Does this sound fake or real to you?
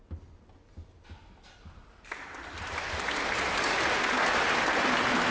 real